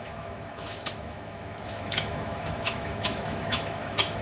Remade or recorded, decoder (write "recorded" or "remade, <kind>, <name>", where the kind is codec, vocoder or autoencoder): remade, autoencoder, DAC-VAE